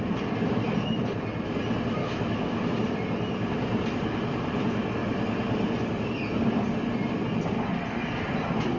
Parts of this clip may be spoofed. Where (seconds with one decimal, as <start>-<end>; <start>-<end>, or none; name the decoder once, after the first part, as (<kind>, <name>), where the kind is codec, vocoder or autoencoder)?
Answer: 2.0-2.6 (autoencoder, DAC-VAE)